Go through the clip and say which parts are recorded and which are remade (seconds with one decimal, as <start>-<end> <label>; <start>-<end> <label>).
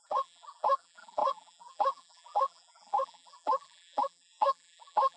0.0-5.2 remade